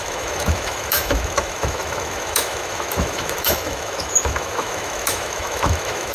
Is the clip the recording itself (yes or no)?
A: no